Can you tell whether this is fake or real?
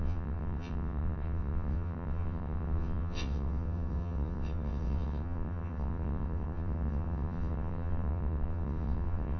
fake